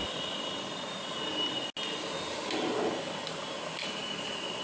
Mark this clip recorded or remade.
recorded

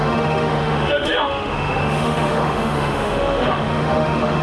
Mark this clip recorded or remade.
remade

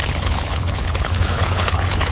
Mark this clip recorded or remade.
remade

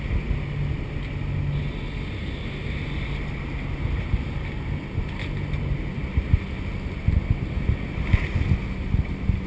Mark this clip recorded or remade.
recorded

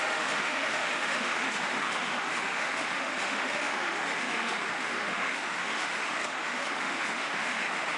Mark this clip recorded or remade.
remade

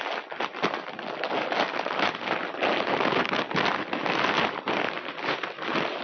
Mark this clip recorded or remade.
recorded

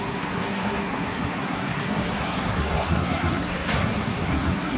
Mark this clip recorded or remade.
remade